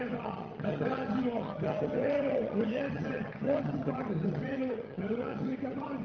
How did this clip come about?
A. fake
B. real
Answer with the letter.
A